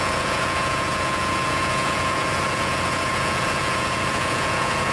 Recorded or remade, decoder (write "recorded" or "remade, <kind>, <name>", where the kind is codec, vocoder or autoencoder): remade, vocoder, Vocos